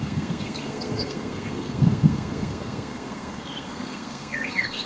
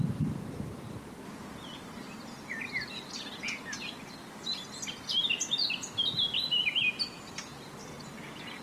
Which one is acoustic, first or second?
second